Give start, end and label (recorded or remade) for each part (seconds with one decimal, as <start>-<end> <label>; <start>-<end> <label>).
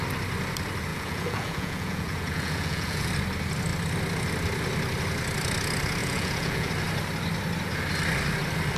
0.0-0.9 recorded; 0.9-3.1 remade; 3.1-6.0 recorded; 6.0-6.7 remade; 6.7-8.8 recorded